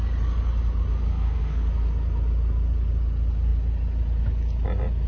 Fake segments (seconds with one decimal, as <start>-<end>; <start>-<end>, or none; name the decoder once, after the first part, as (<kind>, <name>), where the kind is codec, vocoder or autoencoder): 1.1-1.7 (codec, SNAC)